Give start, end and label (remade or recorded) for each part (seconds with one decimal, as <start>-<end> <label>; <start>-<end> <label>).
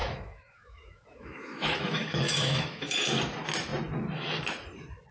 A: 0.0-3.1 remade; 3.1-5.1 recorded